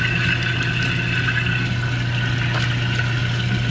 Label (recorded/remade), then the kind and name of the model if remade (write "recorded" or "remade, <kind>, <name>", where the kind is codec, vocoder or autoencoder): recorded